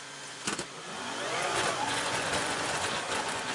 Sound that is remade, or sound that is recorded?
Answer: remade